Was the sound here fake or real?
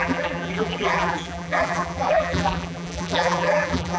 fake